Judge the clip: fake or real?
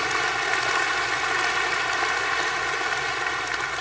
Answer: real